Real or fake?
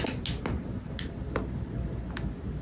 real